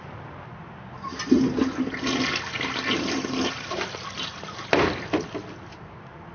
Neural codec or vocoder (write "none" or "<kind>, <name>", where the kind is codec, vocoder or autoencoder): none